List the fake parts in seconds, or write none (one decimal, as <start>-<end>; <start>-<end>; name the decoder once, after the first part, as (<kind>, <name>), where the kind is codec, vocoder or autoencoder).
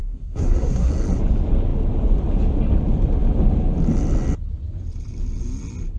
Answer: 0.0-0.9 (codec, SNAC)